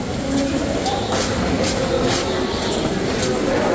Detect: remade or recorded recorded